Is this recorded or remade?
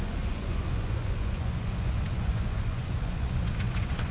remade